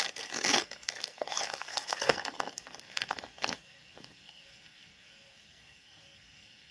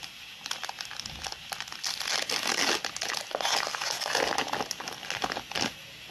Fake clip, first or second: first